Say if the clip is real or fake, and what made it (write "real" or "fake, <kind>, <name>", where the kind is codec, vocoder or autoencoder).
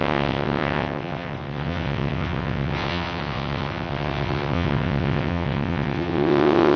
fake, vocoder, WaveNeXt